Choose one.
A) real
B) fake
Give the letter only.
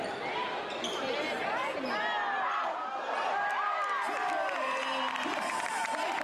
A